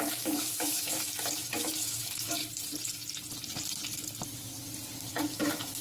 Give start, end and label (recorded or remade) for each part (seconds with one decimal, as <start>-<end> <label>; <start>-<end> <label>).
0.0-2.4 remade; 2.4-5.1 recorded; 5.1-5.8 remade